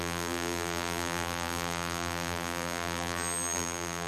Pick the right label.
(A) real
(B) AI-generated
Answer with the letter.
B